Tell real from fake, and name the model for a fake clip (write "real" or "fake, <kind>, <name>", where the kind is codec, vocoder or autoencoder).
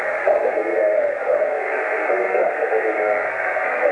fake, codec, SNAC